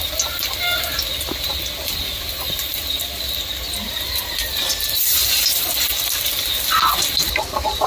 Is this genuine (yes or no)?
yes